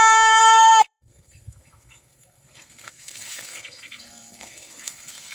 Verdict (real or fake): fake